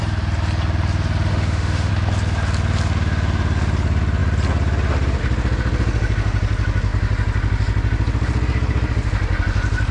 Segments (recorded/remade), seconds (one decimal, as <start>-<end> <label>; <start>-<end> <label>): 0.0-1.3 recorded; 1.3-1.9 remade; 1.9-9.9 recorded